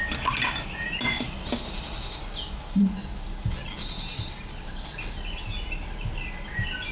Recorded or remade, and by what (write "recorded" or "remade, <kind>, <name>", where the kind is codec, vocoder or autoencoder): recorded